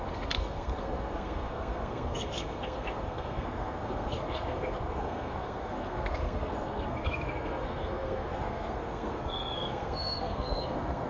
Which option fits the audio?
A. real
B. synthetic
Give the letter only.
B